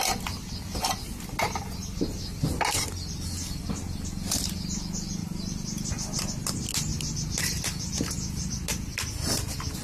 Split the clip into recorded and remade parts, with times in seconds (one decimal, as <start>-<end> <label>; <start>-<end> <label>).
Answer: 0.0-5.2 recorded; 5.2-6.3 remade; 6.3-9.8 recorded